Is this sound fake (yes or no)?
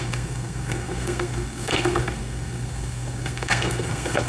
yes